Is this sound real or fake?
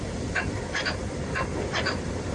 real